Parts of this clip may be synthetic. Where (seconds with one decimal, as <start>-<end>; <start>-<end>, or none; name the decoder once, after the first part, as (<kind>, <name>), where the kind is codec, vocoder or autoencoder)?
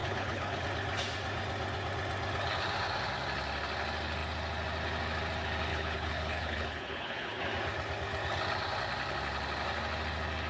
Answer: 0.0-0.6 (codec, HILCodec); 5.7-7.4